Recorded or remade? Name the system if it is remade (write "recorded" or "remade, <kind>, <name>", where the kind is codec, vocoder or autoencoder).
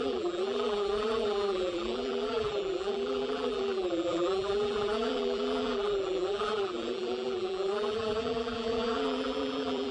remade, vocoder, BigVGAN v2